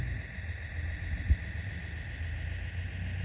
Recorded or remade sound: recorded